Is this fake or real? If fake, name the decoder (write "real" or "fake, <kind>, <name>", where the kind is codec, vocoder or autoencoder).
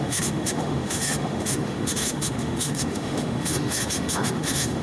fake, autoencoder, DAC-VAE